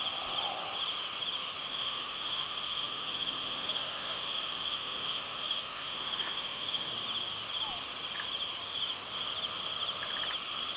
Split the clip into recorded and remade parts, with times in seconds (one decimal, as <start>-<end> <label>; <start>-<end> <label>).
0.0-1.7 recorded; 1.7-6.9 remade; 6.9-10.8 recorded